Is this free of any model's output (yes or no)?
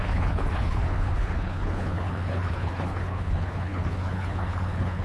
no